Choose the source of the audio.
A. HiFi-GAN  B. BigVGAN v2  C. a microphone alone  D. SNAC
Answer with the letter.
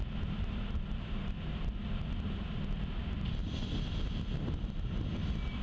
C